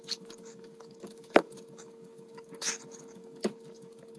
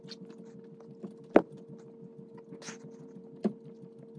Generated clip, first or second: first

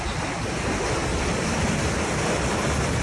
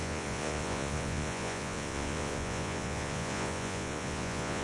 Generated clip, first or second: second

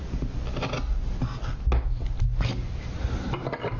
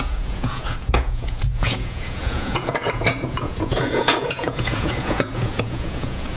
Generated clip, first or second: second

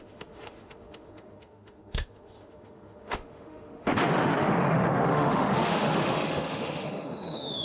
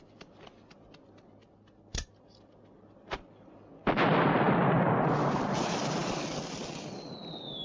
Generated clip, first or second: first